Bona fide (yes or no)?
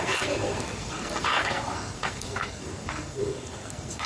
no